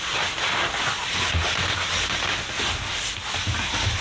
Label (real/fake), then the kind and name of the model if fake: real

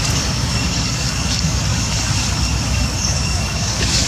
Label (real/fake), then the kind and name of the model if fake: fake, codec, DAC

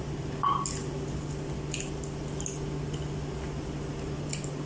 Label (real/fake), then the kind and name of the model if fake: real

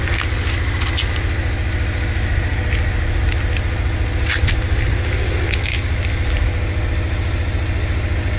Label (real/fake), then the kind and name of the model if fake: real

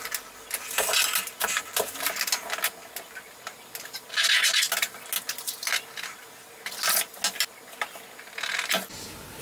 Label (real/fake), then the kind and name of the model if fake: real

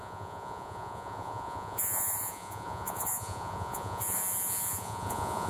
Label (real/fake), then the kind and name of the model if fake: fake, vocoder, Vocos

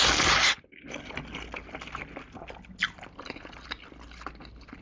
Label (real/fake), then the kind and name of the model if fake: real